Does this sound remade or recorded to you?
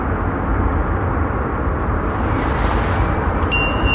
recorded